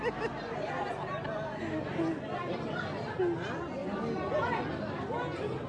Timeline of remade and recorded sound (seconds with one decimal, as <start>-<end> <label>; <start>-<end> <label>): 0.0-5.7 recorded

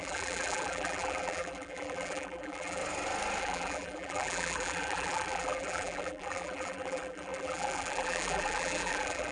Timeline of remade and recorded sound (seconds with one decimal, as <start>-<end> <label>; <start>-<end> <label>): 0.0-2.8 remade; 2.8-3.4 recorded; 3.4-9.3 remade

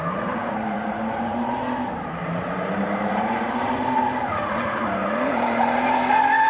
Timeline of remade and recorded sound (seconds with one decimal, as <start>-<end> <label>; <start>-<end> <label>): 0.0-1.5 remade; 1.5-2.2 recorded; 2.2-6.1 remade; 6.1-6.5 recorded

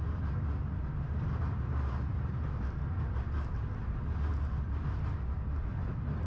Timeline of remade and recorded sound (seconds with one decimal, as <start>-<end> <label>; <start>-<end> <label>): 0.0-5.7 recorded; 5.7-6.3 remade

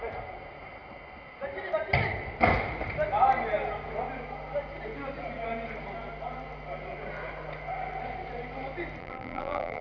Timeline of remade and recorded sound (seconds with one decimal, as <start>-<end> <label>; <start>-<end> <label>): 0.0-9.0 recorded; 9.0-9.8 remade

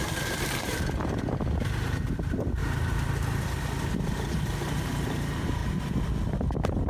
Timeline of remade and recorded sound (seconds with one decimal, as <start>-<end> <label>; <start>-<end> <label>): 0.0-6.9 recorded